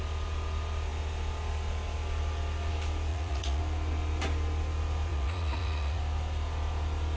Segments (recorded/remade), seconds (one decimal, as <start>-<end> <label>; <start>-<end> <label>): 0.0-3.1 recorded; 3.1-3.6 remade; 3.6-5.1 recorded; 5.1-6.0 remade; 6.0-7.2 recorded